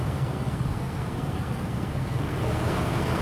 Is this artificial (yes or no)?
yes